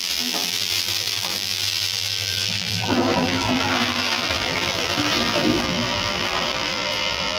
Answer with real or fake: fake